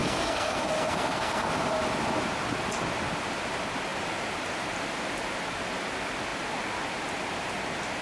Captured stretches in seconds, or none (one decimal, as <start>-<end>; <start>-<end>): 1.5-8.0